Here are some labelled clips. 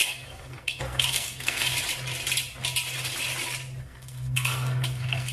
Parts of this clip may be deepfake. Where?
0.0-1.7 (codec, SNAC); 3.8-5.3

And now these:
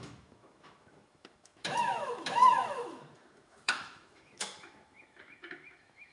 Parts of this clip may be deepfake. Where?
0.0-6.1 (autoencoder, DAC-VAE)

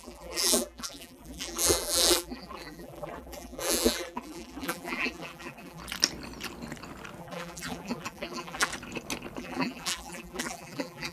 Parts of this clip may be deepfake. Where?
0.0-5.8 (vocoder, BigVGAN v2); 7.2-8.7; 9.4-11.1

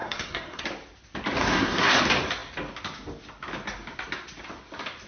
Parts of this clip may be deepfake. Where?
0.0-0.6 (codec, SNAC); 1.4-2.0

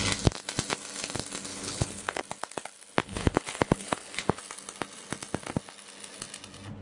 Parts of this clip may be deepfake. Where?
1.5-2.2 (codec, HILCodec); 3.0-4.4